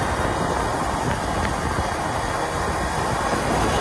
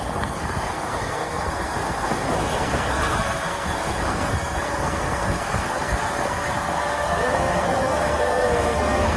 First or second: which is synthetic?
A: second